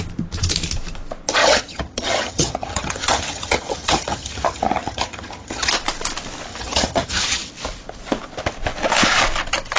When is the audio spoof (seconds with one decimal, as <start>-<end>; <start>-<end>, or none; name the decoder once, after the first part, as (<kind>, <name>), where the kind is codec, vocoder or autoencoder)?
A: 1.4-5.7 (vocoder, HiFi-GAN); 6.5-7.5